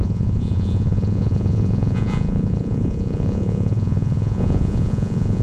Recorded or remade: remade